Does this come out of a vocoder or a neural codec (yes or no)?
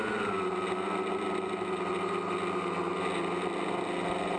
no